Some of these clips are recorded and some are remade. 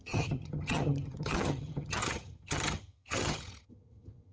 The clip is remade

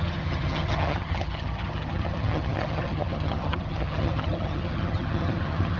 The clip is remade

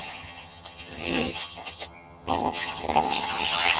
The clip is remade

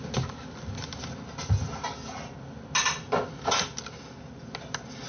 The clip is recorded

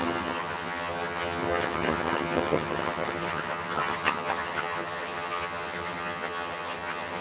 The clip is remade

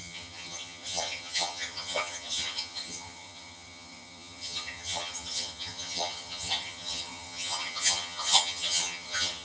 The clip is remade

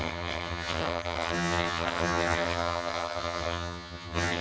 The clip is remade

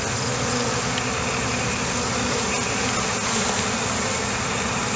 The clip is recorded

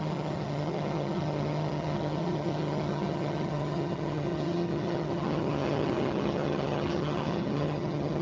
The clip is remade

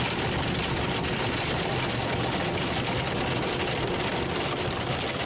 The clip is recorded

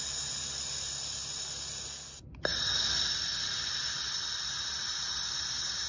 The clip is recorded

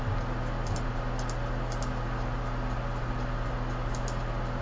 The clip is recorded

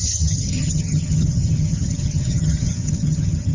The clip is remade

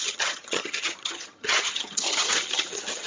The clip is remade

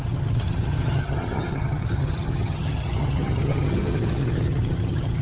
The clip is remade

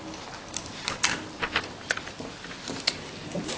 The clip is recorded